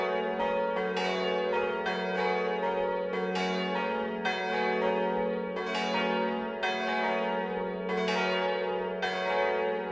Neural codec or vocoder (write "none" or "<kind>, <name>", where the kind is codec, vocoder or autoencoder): none